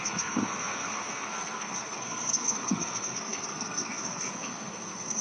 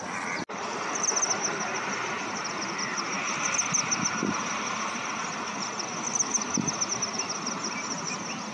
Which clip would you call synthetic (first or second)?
first